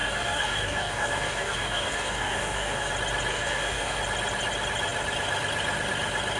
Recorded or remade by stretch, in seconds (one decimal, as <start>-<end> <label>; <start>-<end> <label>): 0.0-2.9 remade; 2.9-3.3 recorded; 3.3-4.0 remade; 4.0-6.4 recorded